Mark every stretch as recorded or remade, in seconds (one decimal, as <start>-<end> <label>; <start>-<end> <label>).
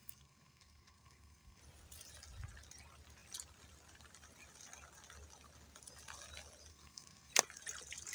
0.0-1.6 remade; 1.6-6.7 recorded; 6.7-7.3 remade; 7.3-8.1 recorded